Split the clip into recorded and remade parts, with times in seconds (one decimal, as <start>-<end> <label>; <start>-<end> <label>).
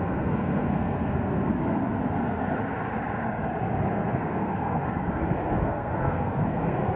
0.0-1.5 remade; 1.5-3.9 recorded; 3.9-4.8 remade; 4.8-5.5 recorded; 5.5-7.0 remade